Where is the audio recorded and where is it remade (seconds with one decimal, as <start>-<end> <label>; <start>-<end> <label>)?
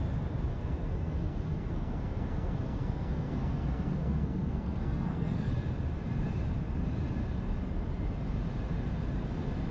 0.0-0.5 recorded; 0.5-5.5 remade; 5.5-9.7 recorded